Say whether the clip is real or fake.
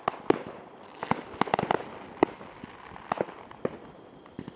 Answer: real